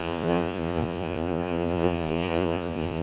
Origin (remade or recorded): remade